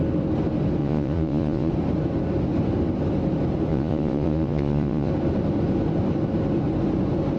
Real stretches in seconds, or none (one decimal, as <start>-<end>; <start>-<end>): 0.0-0.8; 1.7-3.7; 5.1-7.4

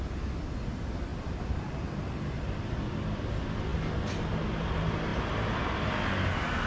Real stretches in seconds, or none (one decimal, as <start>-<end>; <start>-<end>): 0.0-6.7